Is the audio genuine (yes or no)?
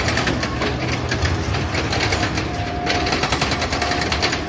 yes